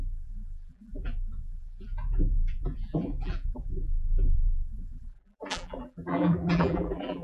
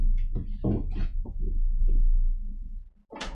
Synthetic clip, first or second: first